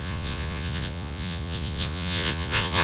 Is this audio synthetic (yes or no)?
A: yes